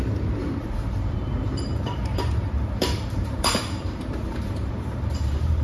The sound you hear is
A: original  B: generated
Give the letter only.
B